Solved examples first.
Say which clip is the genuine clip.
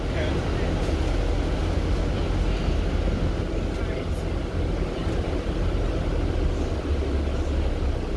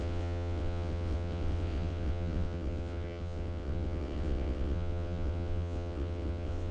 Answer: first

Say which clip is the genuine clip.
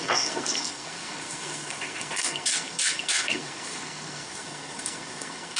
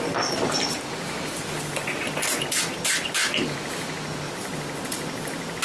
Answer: second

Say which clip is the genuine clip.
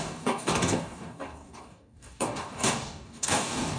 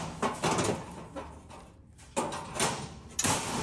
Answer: second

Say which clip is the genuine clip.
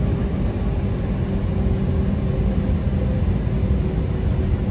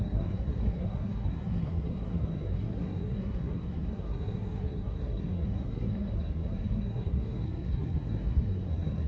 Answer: first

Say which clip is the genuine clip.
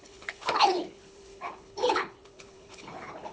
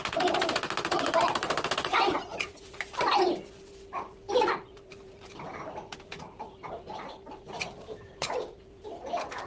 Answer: second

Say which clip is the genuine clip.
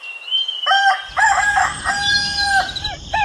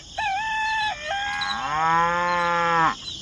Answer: second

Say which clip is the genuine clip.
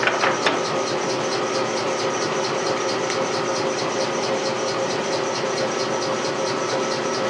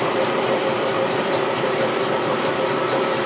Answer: first